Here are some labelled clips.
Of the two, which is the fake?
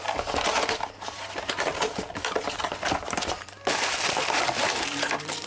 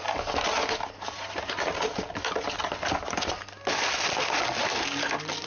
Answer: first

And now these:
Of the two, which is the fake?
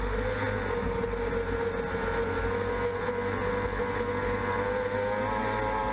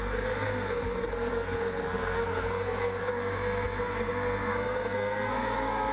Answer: second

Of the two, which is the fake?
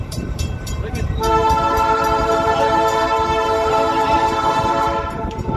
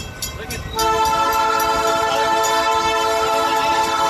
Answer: first